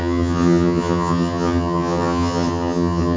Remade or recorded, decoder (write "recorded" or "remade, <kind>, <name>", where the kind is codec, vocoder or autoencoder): remade, vocoder, HiFi-GAN